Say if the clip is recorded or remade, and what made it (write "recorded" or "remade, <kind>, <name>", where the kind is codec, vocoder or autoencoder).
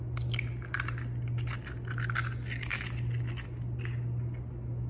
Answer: recorded